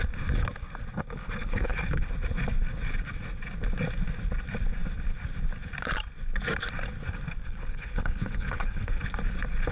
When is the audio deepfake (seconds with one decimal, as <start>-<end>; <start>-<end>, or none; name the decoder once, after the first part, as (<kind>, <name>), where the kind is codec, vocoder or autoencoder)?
1.2-2.1 (codec, HILCodec); 7.4-9.0